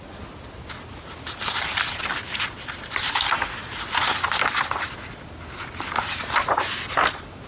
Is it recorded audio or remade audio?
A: recorded